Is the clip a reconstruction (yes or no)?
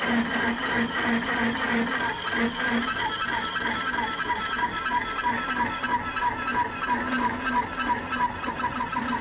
no